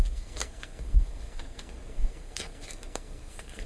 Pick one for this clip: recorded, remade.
remade